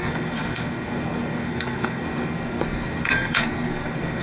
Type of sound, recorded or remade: remade